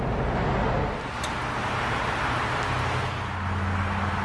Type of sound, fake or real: real